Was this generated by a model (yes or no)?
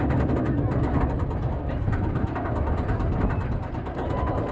no